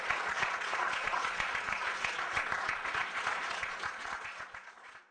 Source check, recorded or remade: remade